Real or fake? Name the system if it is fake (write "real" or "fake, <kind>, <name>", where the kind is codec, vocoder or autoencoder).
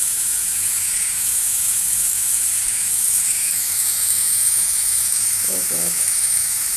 fake, autoencoder, DAC-VAE